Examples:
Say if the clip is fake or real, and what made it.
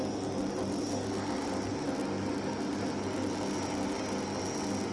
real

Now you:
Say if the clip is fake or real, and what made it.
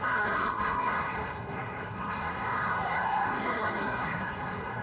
fake, codec, SNAC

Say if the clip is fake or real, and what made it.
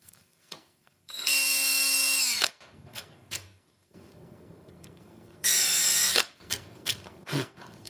fake, codec, SNAC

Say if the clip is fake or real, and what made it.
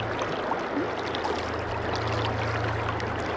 real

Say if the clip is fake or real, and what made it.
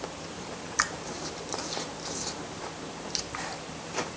fake, vocoder, BigVGAN v2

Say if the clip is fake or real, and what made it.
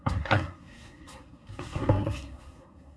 fake, codec, SNAC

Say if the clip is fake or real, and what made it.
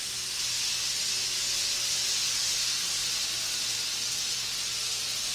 real